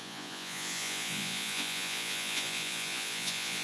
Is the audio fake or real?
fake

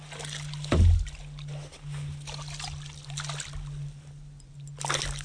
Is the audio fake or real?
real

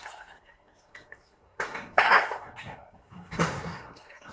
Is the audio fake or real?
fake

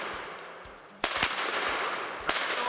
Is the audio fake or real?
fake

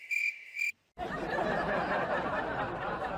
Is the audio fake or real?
fake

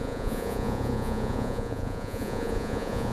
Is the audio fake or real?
fake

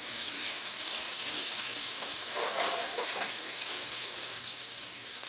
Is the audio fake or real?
fake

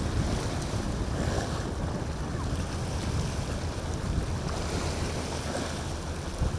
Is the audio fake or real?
real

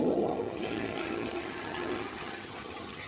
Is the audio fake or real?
fake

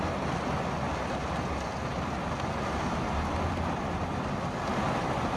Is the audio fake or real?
real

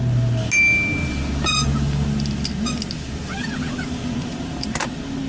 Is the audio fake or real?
real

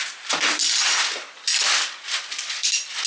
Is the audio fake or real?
real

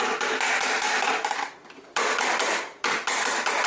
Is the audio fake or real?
real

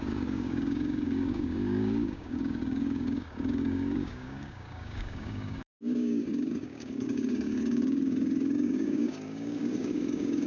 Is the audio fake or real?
fake